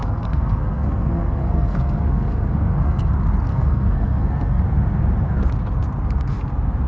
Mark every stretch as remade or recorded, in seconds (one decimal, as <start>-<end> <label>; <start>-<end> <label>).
0.0-3.1 remade; 3.1-3.5 recorded; 3.5-4.6 remade; 4.6-6.9 recorded